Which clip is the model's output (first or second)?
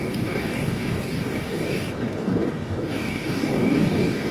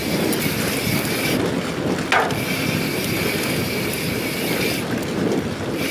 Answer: first